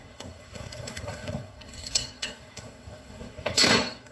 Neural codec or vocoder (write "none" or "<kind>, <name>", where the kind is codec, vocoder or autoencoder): codec, SNAC